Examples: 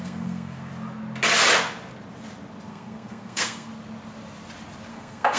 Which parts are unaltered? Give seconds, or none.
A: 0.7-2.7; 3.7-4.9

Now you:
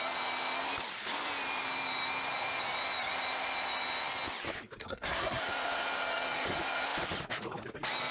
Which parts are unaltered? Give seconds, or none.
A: 0.0-4.8; 5.4-8.1

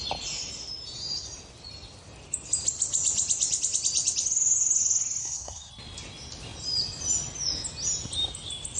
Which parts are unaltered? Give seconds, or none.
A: 0.0-5.2; 5.7-8.8

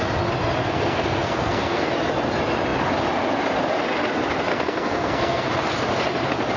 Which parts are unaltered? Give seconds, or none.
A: 0.0-0.6; 1.9-4.5; 5.5-6.6